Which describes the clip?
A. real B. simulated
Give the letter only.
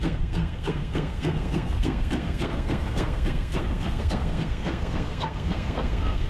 B